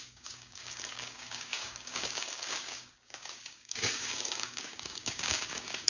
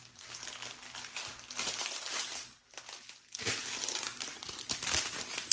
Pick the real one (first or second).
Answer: second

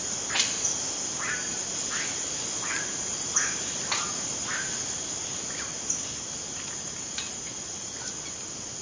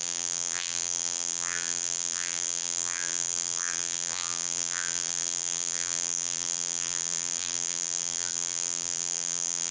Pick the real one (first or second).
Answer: first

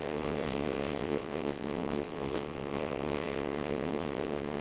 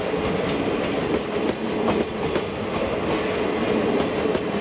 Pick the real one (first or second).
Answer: second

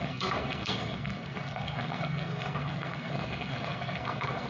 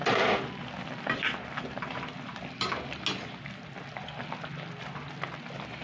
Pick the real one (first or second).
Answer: second